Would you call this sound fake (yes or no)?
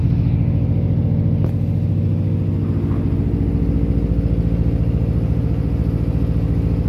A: no